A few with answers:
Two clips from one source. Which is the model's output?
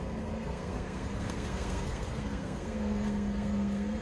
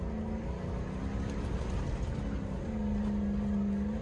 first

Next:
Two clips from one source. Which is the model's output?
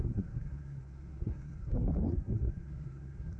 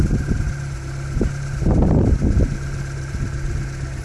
first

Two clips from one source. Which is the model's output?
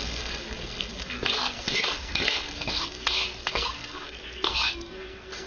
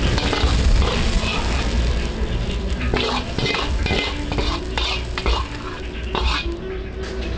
first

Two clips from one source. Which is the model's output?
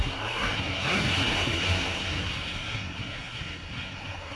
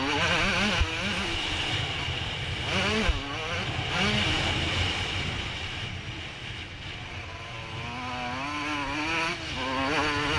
first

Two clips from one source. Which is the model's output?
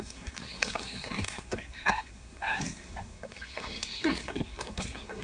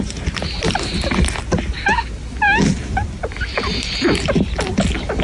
first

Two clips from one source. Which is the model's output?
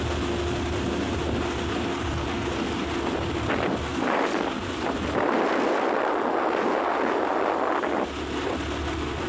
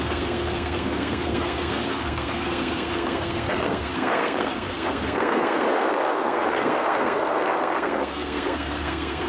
second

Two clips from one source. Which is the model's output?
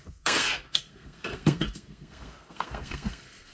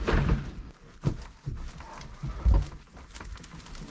first